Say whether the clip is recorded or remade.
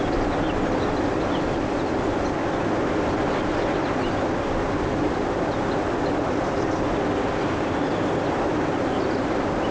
recorded